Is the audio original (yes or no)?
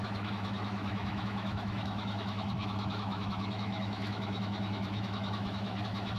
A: no